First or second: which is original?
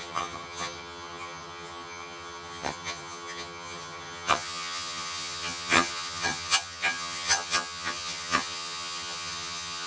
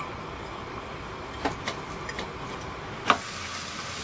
second